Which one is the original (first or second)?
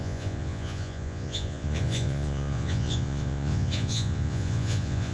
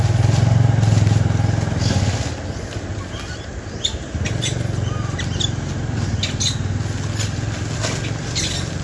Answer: second